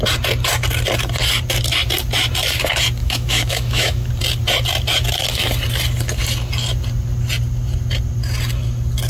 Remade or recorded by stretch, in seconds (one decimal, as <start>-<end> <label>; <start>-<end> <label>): 0.0-3.0 recorded; 3.0-4.1 remade; 4.1-9.1 recorded